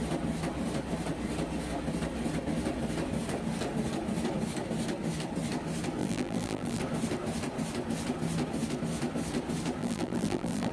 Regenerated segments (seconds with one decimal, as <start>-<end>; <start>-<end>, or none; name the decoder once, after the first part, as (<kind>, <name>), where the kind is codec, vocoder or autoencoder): 6.0-6.8 (vocoder, BigVGAN v2); 9.8-10.7